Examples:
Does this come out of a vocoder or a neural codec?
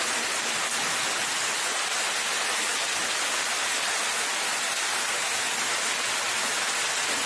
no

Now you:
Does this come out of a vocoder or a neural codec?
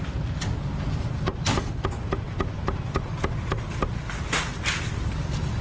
no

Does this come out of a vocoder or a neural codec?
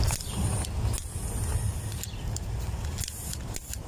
no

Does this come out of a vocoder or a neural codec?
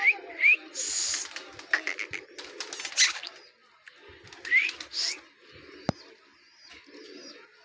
no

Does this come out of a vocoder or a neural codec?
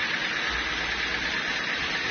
no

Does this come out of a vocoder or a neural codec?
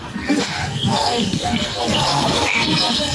yes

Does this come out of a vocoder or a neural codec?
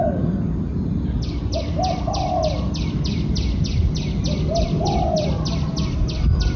no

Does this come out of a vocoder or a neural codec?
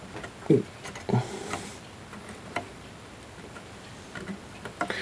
no